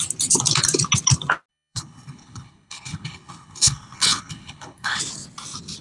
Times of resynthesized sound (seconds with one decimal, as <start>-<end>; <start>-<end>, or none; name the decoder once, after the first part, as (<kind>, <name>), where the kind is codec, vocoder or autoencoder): 1.5-5.0 (codec, HILCodec)